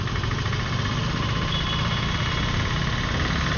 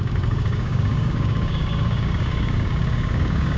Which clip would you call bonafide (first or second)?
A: first